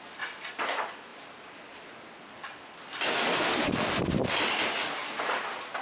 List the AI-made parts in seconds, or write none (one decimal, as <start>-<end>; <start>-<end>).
1.1-3.9